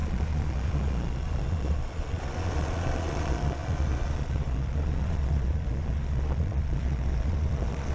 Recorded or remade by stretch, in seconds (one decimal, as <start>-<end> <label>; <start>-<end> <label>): 0.0-7.9 remade